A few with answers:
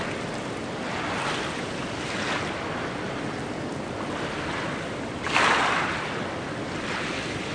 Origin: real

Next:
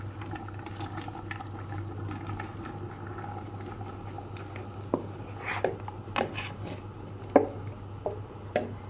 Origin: real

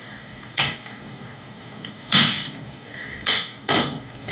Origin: fake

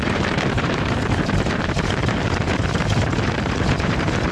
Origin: fake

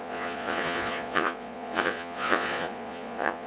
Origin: fake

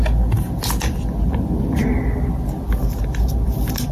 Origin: real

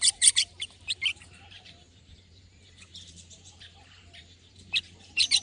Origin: fake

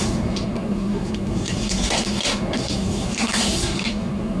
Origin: fake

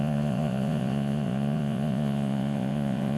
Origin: fake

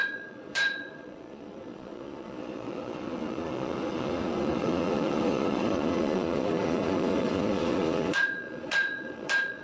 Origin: fake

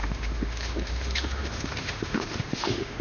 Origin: fake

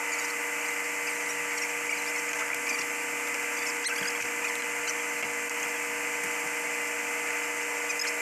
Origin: real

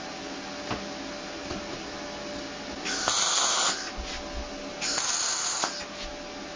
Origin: real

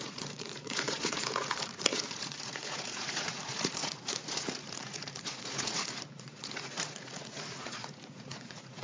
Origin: fake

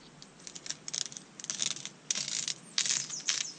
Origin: real